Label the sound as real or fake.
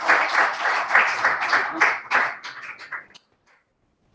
real